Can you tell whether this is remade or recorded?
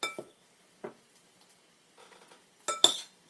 recorded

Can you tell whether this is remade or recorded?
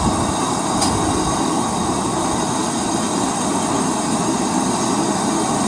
remade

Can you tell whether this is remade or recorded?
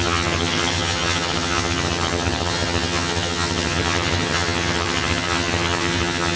remade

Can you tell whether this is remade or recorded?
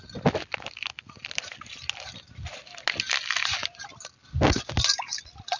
recorded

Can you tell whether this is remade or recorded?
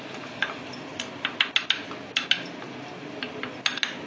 recorded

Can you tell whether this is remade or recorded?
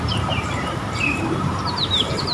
remade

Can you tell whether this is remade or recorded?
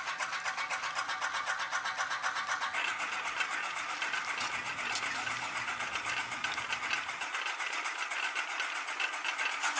recorded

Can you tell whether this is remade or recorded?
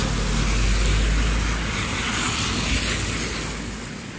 recorded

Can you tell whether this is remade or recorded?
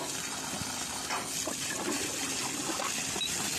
recorded